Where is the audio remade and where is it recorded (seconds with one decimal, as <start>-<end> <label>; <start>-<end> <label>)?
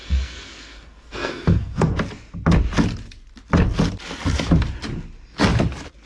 0.0-1.9 remade; 1.9-6.1 recorded